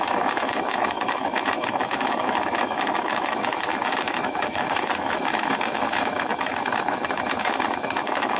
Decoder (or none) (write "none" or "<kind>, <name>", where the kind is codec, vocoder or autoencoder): autoencoder, DAC-VAE